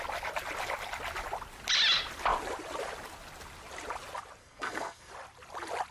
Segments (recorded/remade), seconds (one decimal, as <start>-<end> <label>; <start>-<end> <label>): 0.0-4.4 recorded; 4.4-5.1 remade; 5.1-5.9 recorded